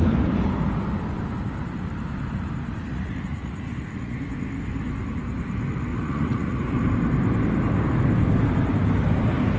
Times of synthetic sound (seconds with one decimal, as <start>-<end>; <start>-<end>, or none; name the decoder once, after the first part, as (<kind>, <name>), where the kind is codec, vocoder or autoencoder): 2.9-4.2 (vocoder, Vocos); 5.9-6.6